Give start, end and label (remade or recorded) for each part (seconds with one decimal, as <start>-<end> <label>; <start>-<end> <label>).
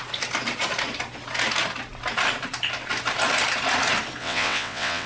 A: 0.0-4.2 recorded; 4.2-5.1 remade